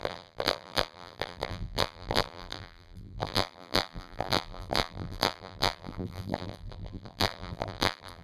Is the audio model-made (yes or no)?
yes